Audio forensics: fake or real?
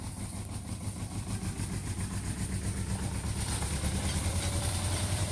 real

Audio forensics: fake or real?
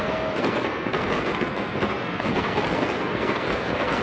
fake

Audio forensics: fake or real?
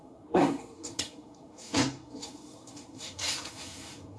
fake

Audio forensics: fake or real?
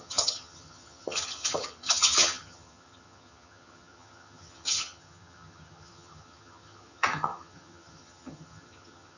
fake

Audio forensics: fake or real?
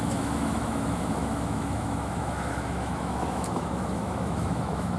fake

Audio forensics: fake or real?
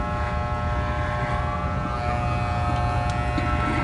real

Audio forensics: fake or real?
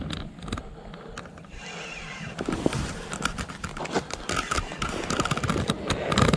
real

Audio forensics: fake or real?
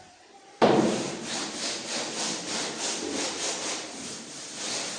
fake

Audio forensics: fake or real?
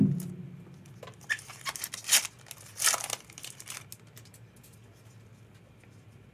real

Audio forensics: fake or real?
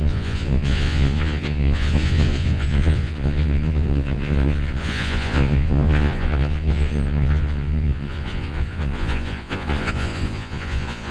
fake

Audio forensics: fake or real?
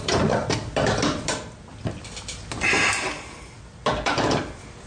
real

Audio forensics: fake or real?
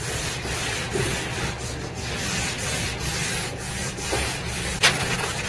fake